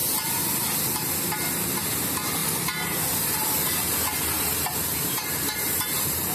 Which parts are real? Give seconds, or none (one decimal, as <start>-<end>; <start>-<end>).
0.0-2.4

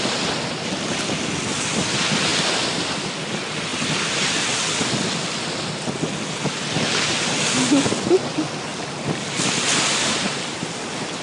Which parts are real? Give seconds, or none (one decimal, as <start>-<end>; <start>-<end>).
0.0-2.3; 3.2-8.7; 9.5-11.2

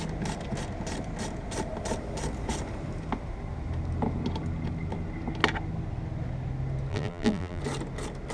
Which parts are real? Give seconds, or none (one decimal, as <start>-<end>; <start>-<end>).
0.0-6.9; 7.6-8.3

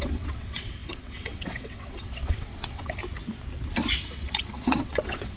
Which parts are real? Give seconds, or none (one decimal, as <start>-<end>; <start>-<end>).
3.0-4.0